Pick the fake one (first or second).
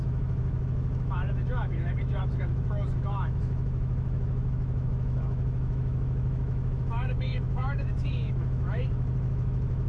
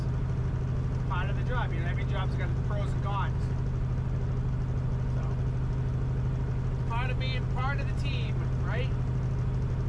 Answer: first